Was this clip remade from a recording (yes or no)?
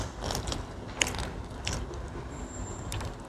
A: yes